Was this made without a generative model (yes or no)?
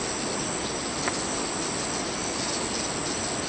yes